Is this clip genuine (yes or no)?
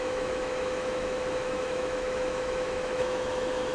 no